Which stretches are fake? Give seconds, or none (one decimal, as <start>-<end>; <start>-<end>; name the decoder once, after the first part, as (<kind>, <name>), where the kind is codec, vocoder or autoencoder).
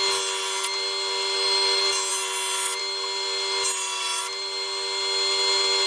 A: none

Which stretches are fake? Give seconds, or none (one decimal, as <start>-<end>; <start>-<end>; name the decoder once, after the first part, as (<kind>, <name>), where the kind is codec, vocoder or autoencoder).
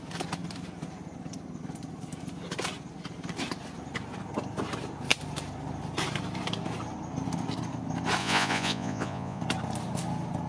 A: 8.2-9.4 (vocoder, Vocos)